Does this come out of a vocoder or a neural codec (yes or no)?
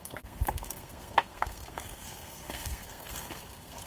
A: yes